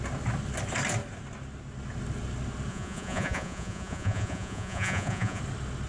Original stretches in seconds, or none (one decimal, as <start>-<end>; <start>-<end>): 0.0-2.7; 5.4-5.9